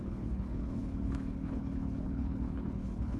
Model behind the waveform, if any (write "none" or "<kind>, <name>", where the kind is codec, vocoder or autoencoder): codec, HILCodec